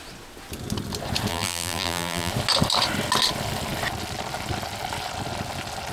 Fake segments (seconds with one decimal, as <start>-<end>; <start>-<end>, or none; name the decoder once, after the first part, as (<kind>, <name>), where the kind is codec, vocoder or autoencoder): 1.3-2.3 (vocoder, BigVGAN v2)